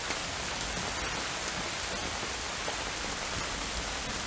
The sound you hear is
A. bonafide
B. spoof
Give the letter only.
A